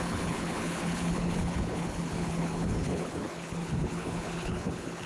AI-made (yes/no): yes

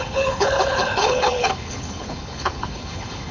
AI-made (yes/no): yes